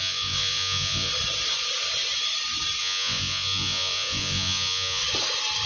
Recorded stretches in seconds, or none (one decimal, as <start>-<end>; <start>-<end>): 1.1-2.8; 5.0-5.7